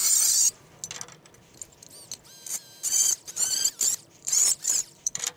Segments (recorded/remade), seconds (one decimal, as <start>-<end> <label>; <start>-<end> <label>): 0.0-2.9 recorded; 2.9-5.4 remade